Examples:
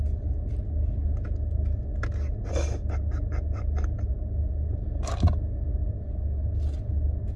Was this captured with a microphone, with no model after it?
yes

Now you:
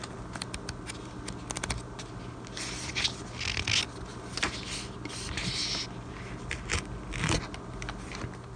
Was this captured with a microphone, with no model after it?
yes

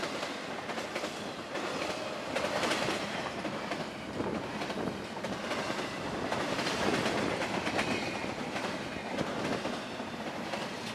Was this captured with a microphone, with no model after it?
yes